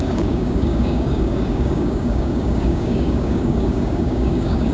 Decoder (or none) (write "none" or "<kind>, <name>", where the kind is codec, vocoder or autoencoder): codec, DAC